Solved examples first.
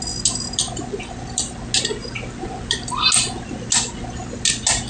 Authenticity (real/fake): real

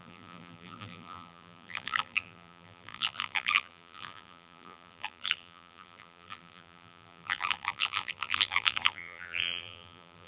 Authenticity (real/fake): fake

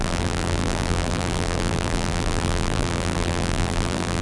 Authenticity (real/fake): fake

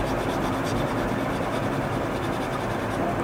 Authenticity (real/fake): fake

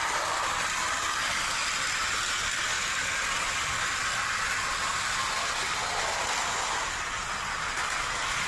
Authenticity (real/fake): real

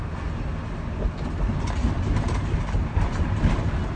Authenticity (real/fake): real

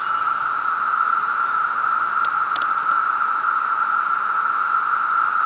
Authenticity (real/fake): real